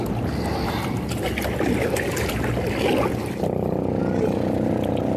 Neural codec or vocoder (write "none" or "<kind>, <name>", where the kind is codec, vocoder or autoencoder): none